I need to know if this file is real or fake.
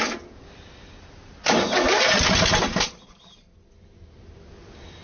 real